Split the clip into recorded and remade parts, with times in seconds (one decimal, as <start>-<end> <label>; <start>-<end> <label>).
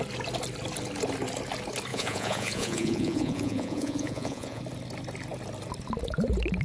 0.0-1.9 recorded; 1.9-4.6 remade; 4.6-6.6 recorded